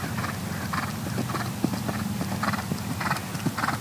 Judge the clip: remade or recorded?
recorded